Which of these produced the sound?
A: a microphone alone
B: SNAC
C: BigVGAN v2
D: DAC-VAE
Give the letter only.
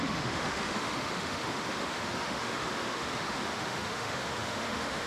D